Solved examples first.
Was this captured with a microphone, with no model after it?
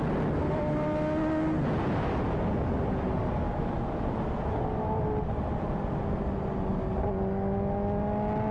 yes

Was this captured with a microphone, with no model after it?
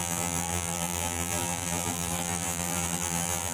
no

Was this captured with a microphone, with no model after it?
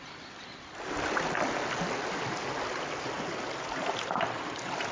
yes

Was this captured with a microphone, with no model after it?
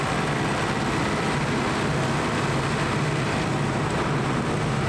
yes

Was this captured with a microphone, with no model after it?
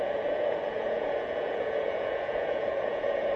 no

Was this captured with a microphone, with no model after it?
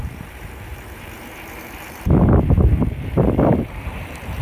no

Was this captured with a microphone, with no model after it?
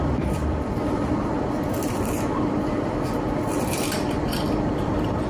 no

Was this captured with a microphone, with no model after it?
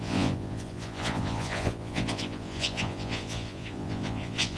no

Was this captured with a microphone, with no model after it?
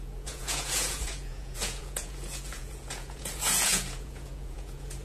no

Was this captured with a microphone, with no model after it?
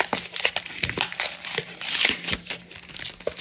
yes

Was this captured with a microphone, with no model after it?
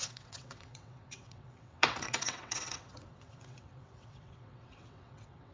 no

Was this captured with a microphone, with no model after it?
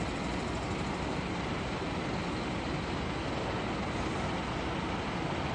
yes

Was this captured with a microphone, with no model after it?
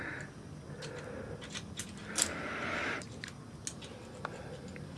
yes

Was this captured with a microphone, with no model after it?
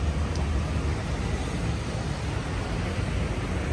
yes